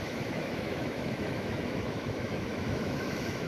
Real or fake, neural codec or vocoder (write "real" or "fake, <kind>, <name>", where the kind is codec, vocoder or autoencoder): fake, autoencoder, DAC-VAE